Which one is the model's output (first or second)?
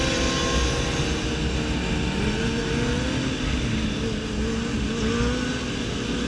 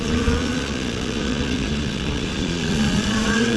second